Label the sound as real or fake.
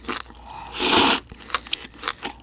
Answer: real